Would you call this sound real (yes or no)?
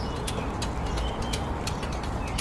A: yes